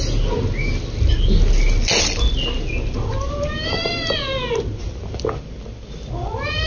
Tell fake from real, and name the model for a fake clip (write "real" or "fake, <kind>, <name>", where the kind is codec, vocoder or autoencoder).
real